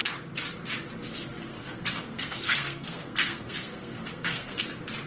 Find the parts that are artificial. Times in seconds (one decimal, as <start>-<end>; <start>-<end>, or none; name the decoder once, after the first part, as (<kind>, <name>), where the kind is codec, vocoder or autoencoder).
1.5-4.6 (codec, SNAC)